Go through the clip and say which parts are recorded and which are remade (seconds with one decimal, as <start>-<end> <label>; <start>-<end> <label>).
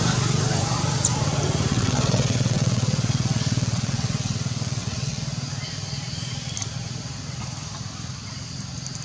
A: 0.0-1.7 recorded; 1.7-5.2 remade; 5.2-9.0 recorded